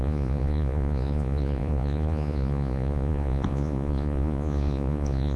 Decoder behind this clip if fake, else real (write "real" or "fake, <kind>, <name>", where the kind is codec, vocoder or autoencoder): fake, vocoder, Vocos